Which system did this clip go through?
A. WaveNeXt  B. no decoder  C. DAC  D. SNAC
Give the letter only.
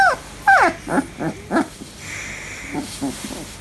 B